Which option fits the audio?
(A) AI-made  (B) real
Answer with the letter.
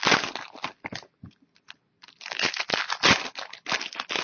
B